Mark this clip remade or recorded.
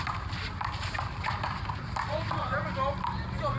recorded